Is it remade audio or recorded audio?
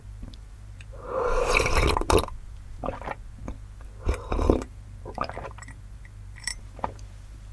remade